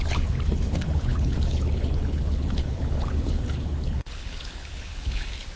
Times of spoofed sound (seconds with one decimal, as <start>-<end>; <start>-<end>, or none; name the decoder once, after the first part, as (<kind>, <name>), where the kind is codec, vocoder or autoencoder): 0.0-5.6 (codec, HILCodec)